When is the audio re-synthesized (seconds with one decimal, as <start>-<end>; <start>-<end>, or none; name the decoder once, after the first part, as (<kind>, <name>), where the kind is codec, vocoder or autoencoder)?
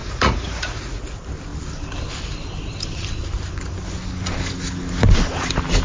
0.0-1.0 (vocoder, Vocos)